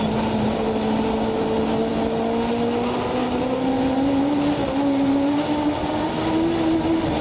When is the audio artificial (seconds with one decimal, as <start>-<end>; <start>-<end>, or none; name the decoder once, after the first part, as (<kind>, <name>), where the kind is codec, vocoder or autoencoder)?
none